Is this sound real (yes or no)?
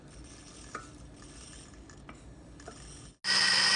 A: yes